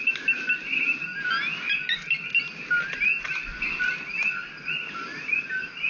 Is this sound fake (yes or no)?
no